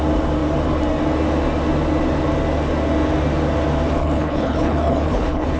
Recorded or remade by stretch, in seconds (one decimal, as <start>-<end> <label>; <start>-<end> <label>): 0.0-4.0 recorded; 4.0-5.6 remade